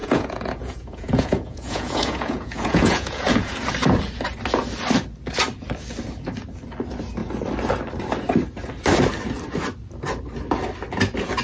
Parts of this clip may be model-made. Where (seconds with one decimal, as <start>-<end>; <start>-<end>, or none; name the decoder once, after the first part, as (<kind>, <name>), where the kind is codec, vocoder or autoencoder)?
0.0-3.7 (vocoder, Vocos)